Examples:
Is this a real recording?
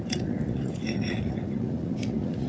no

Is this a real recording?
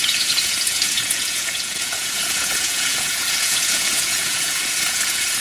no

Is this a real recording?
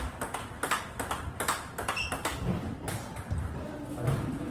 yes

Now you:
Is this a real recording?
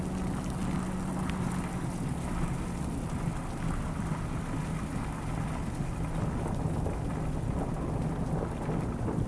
yes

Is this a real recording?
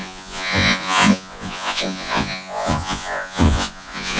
no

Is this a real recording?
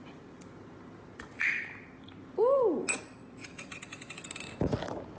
yes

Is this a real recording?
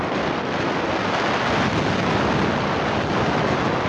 yes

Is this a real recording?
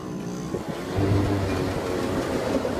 yes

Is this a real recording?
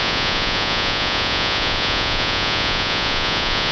no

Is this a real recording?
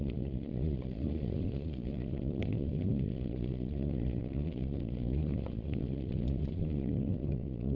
no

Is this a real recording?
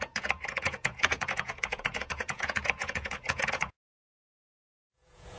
no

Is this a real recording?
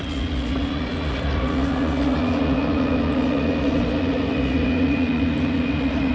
no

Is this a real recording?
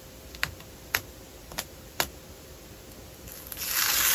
yes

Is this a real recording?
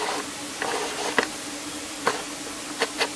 yes